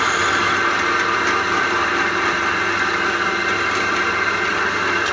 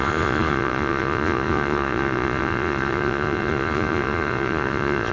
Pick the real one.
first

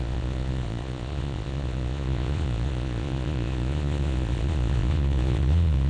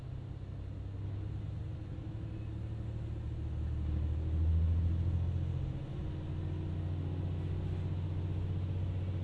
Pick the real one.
second